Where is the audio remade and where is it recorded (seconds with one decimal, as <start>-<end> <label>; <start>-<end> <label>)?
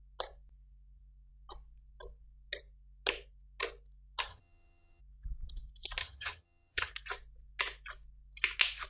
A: 0.0-4.3 recorded; 4.3-5.0 remade; 5.0-6.0 recorded; 6.0-6.9 remade; 6.9-8.9 recorded